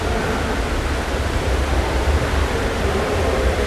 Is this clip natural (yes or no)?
yes